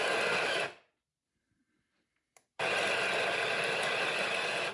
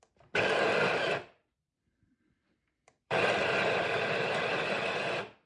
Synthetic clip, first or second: second